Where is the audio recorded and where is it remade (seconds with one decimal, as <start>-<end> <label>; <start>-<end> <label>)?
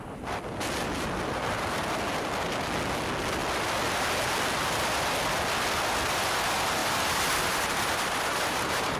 0.0-6.8 recorded; 6.8-9.0 remade